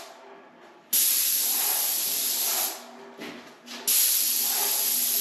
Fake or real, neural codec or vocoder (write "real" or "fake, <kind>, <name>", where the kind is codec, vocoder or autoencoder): real